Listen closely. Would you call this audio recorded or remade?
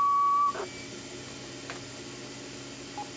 recorded